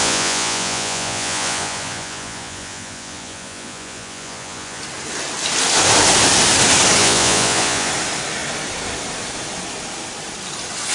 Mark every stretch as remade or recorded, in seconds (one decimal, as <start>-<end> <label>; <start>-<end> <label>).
0.0-4.8 remade; 4.8-7.0 recorded; 7.0-7.9 remade; 7.9-10.9 recorded